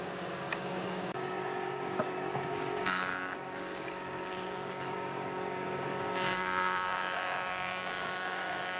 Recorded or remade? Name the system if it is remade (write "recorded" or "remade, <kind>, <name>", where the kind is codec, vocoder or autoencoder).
remade, codec, DAC